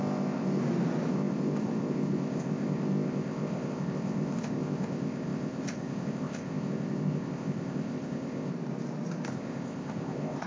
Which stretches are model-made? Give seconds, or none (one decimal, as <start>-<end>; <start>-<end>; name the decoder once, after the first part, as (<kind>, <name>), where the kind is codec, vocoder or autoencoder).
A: 0.0-0.6 (codec, ZipCodec); 1.1-8.5; 9.3-10.5